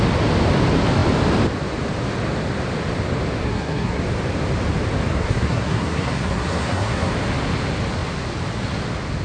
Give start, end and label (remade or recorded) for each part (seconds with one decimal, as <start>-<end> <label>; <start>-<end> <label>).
0.0-3.4 recorded; 3.4-4.0 remade; 4.0-5.1 recorded; 5.1-7.1 remade; 7.1-9.2 recorded

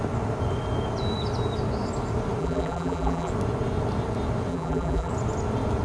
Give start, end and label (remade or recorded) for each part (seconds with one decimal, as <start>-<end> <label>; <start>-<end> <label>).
0.0-2.4 recorded; 2.4-3.3 remade; 3.3-4.5 recorded; 4.5-5.1 remade; 5.1-5.8 recorded